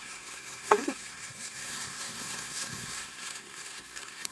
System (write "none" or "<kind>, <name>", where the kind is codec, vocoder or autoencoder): codec, SNAC